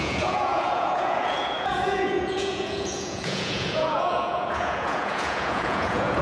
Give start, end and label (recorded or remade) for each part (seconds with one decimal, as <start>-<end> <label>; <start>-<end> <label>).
0.0-6.2 remade